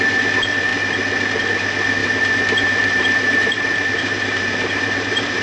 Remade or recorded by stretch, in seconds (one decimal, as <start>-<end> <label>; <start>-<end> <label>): 0.0-2.0 recorded; 2.0-5.4 remade